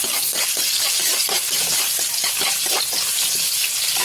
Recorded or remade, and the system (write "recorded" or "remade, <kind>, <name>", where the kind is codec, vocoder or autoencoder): recorded